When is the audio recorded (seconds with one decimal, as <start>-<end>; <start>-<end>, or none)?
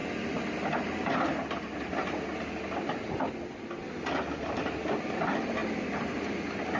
0.0-6.8